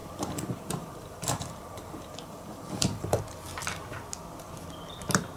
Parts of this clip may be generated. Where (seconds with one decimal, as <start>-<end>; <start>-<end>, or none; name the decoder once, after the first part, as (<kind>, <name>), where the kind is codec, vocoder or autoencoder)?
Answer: 0.0-3.2 (vocoder, BigVGAN v2)